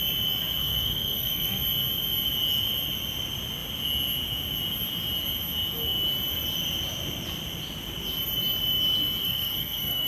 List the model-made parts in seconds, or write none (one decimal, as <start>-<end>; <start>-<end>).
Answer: 0.6-1.6; 9.2-10.1